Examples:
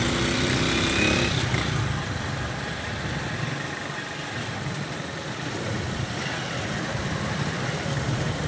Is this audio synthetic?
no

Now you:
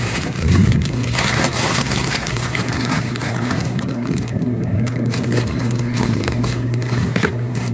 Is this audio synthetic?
yes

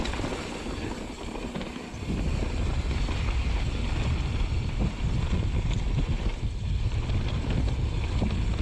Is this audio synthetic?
no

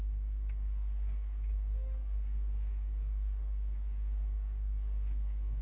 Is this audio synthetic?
yes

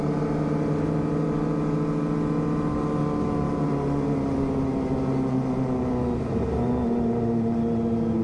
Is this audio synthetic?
no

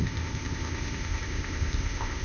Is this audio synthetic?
yes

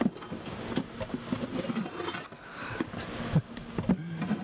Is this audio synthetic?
no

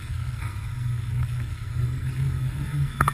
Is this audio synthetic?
yes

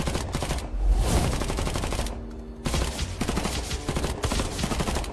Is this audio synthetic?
no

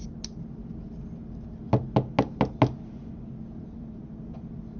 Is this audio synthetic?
no